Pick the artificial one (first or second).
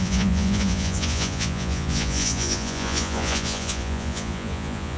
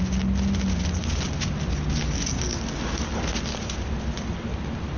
first